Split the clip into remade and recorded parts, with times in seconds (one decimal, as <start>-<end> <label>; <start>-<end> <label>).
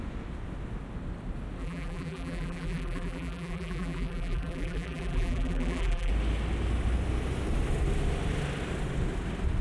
0.0-1.6 recorded; 1.6-6.1 remade; 6.1-9.6 recorded